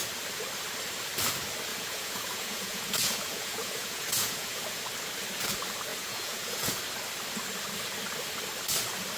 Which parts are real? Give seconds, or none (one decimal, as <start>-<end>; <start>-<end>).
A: 0.0-1.7; 4.8-5.9; 6.8-9.2